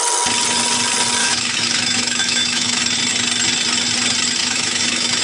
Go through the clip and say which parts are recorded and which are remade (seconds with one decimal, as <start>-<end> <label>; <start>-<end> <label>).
0.0-1.2 recorded; 1.2-2.8 remade; 2.8-4.4 recorded; 4.4-5.2 remade